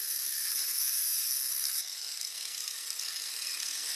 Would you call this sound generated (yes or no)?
yes